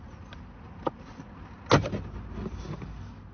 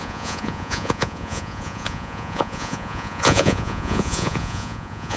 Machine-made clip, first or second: second